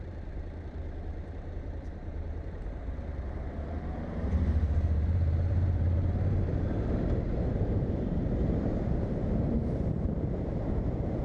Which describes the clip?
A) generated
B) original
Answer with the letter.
A